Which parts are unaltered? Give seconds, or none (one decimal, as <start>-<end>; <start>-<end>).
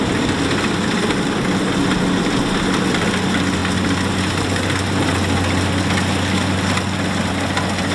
0.0-7.9